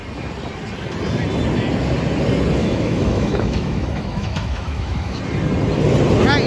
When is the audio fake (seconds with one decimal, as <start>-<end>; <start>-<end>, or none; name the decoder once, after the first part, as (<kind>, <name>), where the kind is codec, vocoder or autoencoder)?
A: 2.6-5.2 (autoencoder, DAC-VAE)